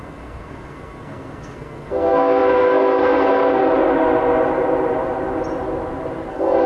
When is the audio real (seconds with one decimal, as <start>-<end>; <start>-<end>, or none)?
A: 3.6-6.3